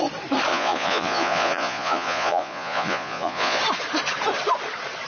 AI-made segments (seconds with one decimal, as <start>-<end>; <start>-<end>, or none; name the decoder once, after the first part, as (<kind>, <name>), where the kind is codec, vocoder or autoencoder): 0.5-3.6 (vocoder, Vocos)